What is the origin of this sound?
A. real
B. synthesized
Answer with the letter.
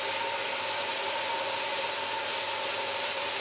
A